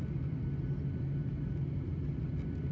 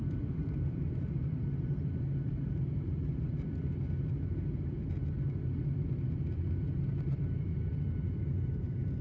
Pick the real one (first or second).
first